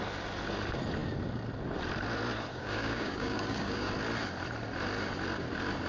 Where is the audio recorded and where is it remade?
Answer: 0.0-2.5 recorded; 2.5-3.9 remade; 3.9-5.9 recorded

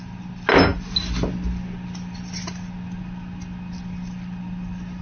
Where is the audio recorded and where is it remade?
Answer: 0.0-5.0 recorded

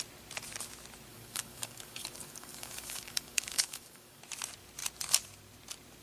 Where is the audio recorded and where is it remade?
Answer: 0.0-1.1 recorded; 1.1-4.2 remade; 4.2-6.0 recorded

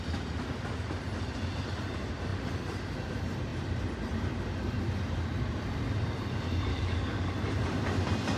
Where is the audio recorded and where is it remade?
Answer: 0.0-6.7 recorded; 6.7-7.3 remade; 7.3-8.4 recorded